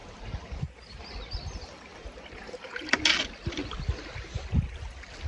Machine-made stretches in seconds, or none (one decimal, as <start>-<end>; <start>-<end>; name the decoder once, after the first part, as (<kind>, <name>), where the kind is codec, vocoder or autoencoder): 0.0-1.0 (vocoder, BigVGAN v2); 1.9-3.0

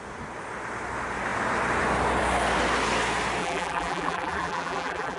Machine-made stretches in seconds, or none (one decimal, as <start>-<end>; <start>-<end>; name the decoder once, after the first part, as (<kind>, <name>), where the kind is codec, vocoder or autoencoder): 3.4-5.2 (vocoder, BigVGAN v2)

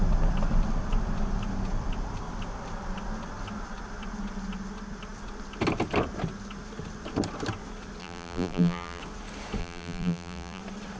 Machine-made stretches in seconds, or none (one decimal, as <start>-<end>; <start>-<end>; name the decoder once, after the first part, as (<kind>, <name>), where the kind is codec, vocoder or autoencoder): 8.0-9.0 (vocoder, BigVGAN v2); 9.6-10.6

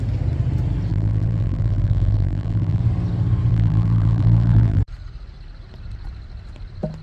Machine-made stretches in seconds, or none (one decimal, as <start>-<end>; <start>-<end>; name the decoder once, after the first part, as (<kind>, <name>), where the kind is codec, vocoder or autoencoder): 0.9-2.8 (vocoder, BigVGAN v2); 3.5-4.8

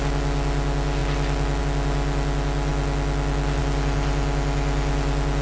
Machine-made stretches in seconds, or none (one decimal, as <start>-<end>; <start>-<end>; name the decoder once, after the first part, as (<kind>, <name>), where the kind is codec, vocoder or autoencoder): none

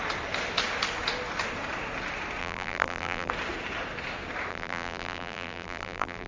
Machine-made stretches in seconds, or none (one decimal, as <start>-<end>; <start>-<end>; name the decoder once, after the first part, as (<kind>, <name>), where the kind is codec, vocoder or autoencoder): 2.4-3.3 (vocoder, BigVGAN v2); 4.5-6.3

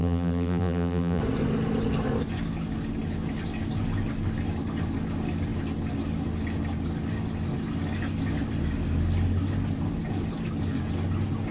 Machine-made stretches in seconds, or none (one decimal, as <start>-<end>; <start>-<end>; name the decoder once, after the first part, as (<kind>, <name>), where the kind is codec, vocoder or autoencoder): 0.0-1.2 (vocoder, BigVGAN v2)

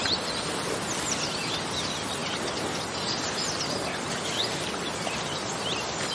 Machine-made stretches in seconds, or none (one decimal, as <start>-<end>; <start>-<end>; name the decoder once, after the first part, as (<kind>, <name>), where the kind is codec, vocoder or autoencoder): none